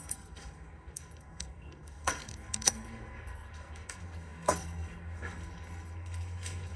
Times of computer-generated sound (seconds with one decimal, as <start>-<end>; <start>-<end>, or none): 0.0-6.8